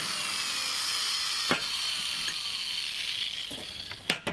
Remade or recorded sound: recorded